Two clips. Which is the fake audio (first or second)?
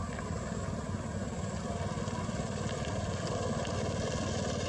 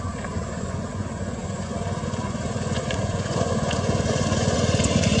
second